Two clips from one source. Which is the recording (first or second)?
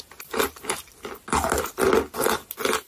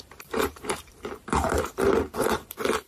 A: first